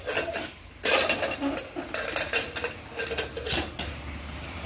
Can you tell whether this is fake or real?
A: real